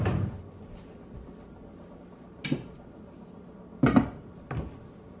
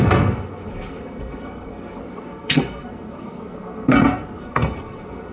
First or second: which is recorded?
first